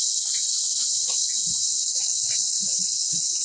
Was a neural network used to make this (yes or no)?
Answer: no